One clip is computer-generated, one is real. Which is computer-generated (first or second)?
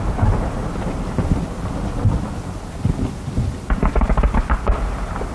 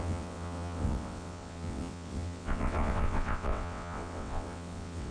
second